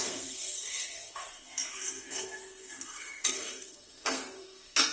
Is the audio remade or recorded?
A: remade